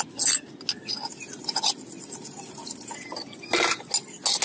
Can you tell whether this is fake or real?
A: real